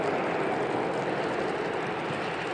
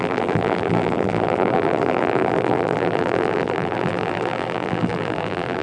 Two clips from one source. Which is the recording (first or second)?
first